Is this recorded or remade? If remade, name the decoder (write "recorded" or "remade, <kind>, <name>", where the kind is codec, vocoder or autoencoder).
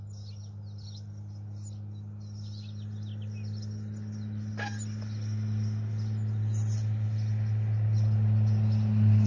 recorded